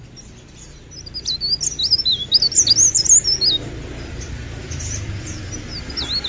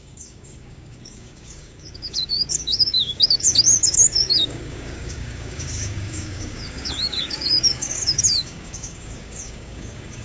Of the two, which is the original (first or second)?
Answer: first